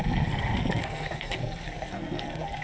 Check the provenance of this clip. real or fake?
fake